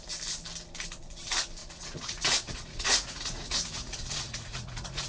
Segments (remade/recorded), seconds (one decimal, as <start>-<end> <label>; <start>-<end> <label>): 0.0-1.6 recorded; 1.6-5.1 remade